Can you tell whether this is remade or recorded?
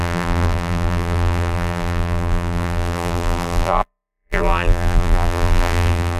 remade